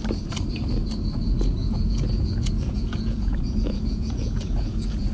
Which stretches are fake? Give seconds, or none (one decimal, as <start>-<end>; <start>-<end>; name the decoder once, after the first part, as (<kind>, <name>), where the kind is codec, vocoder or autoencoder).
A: 1.6-5.1 (vocoder, Vocos)